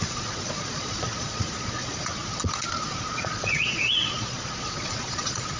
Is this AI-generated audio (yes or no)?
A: yes